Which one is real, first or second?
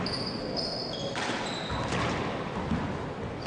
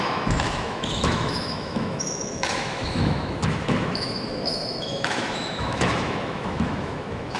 first